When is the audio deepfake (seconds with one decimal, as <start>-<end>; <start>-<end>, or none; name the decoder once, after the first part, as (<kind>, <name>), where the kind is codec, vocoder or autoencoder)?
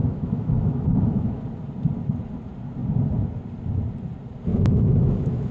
0.0-1.4 (autoencoder, DAC-VAE); 4.5-5.5